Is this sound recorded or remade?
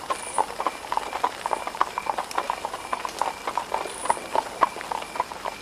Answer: recorded